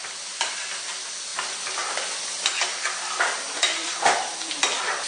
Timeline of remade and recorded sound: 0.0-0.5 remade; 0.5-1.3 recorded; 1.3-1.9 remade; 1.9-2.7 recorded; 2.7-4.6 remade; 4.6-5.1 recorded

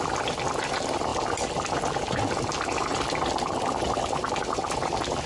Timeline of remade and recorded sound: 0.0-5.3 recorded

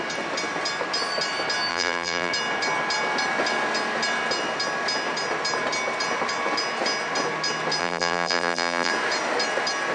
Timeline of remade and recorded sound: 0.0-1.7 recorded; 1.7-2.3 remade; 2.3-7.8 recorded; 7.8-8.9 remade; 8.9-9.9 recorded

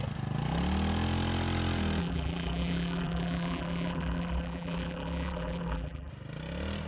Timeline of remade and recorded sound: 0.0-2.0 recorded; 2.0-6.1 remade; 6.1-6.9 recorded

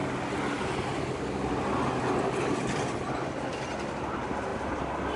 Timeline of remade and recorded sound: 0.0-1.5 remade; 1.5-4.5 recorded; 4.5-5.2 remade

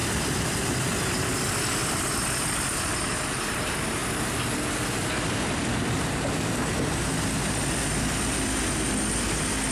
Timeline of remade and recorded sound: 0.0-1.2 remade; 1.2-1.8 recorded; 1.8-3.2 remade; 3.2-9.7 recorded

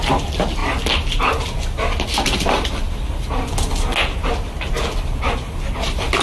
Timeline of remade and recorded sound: 0.0-6.2 recorded